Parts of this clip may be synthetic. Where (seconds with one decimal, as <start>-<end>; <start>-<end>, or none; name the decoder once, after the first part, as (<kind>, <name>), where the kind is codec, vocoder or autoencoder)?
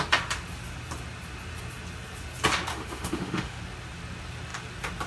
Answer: 2.7-3.6 (autoencoder, DAC-VAE)